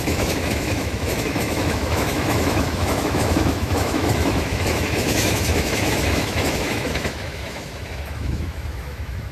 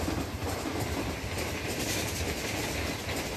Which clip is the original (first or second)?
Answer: second